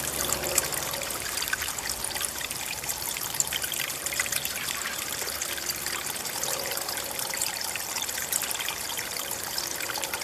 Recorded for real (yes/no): no